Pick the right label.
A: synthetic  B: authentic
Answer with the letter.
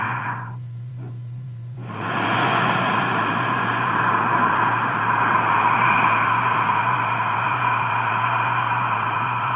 A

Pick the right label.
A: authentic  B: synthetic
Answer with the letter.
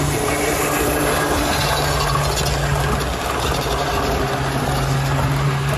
A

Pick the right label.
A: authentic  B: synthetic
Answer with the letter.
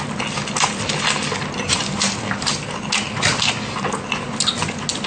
A